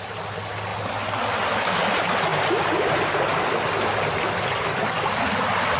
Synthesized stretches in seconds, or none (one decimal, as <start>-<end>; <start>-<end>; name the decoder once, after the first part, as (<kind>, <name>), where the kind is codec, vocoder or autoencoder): none